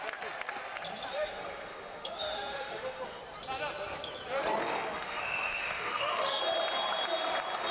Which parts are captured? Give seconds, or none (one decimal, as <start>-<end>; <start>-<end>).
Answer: 0.0-1.1; 3.2-4.6; 6.4-7.7